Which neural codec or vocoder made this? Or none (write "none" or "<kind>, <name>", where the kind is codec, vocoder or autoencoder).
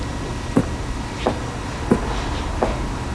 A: none